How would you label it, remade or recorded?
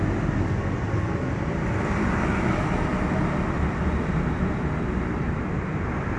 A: recorded